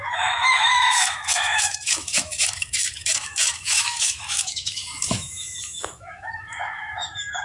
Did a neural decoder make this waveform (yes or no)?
yes